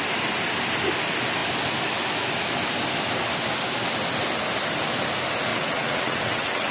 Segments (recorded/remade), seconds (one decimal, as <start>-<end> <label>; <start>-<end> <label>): 0.0-5.5 recorded; 5.5-6.7 remade